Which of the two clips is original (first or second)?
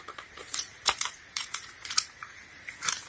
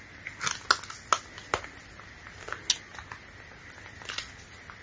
second